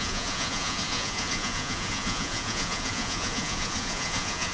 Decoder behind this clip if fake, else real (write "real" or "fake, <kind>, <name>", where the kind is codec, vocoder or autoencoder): fake, vocoder, Vocos